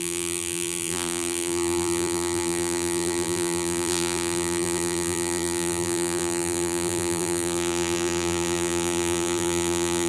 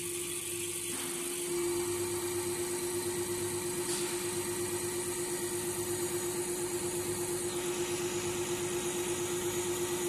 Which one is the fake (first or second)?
first